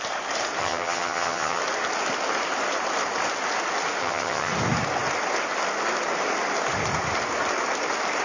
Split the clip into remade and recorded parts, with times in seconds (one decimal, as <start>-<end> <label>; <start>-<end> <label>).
0.0-0.6 recorded; 0.6-1.6 remade; 1.6-4.0 recorded; 4.0-4.5 remade; 4.5-8.2 recorded